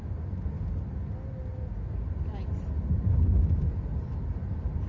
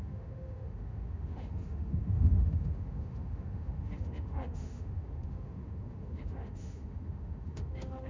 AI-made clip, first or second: second